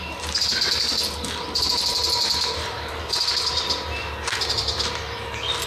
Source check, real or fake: real